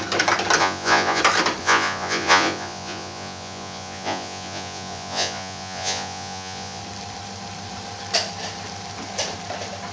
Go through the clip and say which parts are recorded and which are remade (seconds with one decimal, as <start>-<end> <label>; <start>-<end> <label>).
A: 0.0-0.6 recorded; 0.6-1.2 remade; 1.2-1.6 recorded; 1.6-6.8 remade; 6.8-9.9 recorded